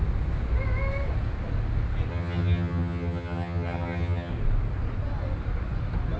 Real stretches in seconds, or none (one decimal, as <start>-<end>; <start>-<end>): 0.0-2.1; 4.3-6.2